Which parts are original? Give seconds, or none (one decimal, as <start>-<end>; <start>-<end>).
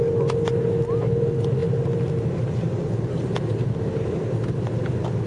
0.0-5.3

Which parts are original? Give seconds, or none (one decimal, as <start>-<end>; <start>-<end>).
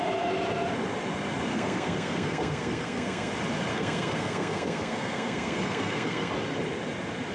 0.0-1.5; 3.3-3.7; 6.3-7.3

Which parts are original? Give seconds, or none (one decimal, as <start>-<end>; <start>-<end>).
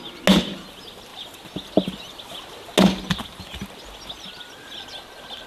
0.0-5.5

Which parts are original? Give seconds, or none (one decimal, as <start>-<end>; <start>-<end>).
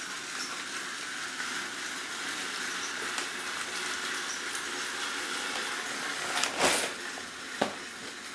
0.0-8.3